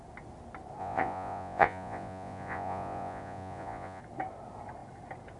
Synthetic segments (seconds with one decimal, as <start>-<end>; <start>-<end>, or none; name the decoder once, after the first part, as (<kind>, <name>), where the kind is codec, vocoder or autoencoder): 0.8-4.0 (vocoder, Vocos)